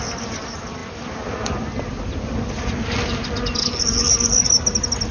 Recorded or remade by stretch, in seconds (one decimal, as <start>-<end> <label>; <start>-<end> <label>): 0.0-5.1 recorded